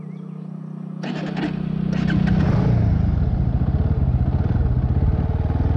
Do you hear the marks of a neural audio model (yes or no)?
no